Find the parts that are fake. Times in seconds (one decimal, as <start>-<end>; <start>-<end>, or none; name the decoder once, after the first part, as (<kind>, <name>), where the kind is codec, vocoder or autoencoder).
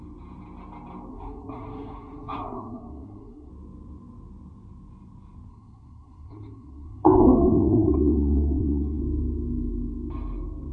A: 1.1-3.5 (codec, SNAC); 5.5-9.0